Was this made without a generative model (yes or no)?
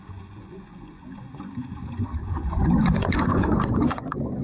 no